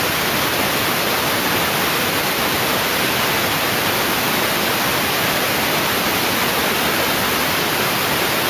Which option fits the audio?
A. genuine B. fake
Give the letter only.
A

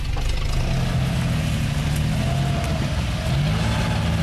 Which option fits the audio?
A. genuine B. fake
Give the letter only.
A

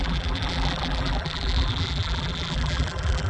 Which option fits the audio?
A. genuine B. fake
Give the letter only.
B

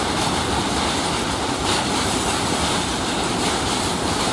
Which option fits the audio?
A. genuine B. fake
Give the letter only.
B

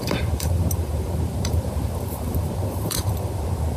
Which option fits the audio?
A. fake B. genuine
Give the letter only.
A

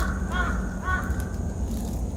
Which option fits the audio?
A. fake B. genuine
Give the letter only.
B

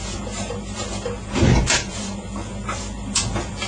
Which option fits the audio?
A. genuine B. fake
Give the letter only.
B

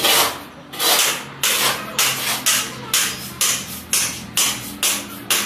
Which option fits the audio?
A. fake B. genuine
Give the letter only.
B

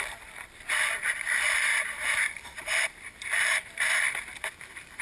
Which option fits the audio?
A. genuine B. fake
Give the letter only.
B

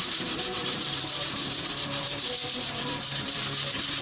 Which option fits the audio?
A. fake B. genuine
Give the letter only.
A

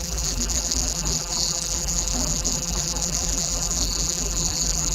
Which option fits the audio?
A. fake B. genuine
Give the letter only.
A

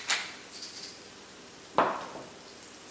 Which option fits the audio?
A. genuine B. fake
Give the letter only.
A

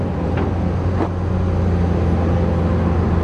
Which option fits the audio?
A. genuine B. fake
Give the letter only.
A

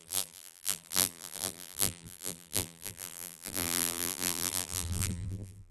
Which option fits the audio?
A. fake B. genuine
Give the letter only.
A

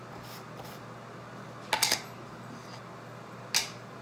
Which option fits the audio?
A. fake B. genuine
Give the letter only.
B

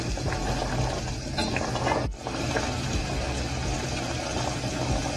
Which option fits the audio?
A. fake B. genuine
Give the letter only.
B